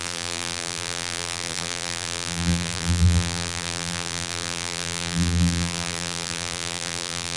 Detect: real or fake fake